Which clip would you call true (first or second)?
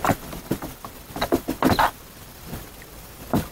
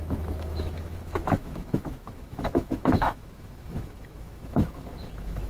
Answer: first